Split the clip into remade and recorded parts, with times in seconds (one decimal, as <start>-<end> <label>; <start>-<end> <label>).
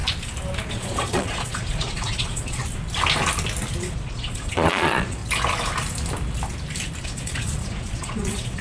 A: 0.0-0.7 recorded; 0.7-2.6 remade; 2.6-3.8 recorded; 3.8-5.2 remade; 5.2-7.0 recorded; 7.0-8.6 remade